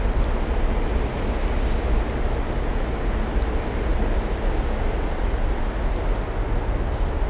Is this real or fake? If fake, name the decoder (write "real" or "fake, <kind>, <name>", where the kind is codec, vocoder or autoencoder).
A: real